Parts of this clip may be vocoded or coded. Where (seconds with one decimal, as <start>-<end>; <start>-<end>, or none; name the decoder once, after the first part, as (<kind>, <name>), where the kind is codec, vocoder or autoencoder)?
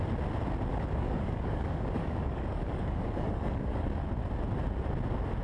0.7-3.9 (codec, DAC)